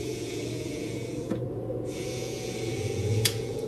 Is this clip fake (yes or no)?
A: yes